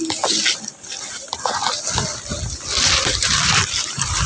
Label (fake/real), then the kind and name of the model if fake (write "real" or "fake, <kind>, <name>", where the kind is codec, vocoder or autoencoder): real